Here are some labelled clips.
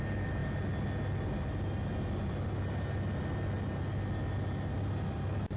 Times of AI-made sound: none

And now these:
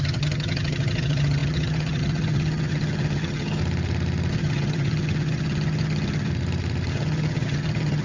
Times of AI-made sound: 0.0-3.6 (vocoder, HiFi-GAN); 4.3-6.3; 6.9-8.0

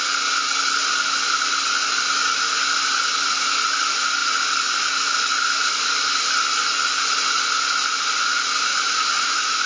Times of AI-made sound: 8.7-9.7 (autoencoder, DAC-VAE)

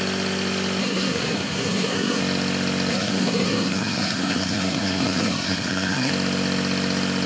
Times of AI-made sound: 0.8-2.2 (codec, SNAC); 2.9-6.1

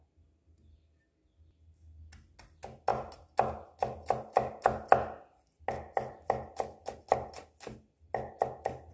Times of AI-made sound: none

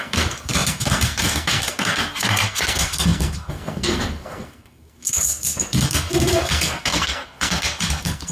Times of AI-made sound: 0.0-8.3 (codec, SNAC)